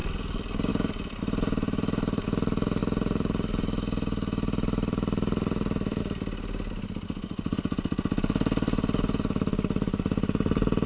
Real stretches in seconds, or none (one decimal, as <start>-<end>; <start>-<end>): 0.0-2.8; 6.0-10.9